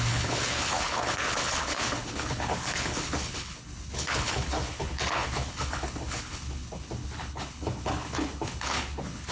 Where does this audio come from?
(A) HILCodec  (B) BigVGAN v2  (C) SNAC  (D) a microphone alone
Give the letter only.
A